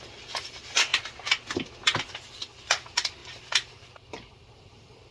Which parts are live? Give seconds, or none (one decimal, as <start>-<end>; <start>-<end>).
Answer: 0.9-2.1